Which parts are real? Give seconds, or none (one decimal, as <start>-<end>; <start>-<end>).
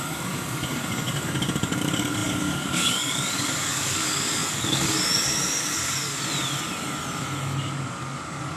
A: 6.1-7.6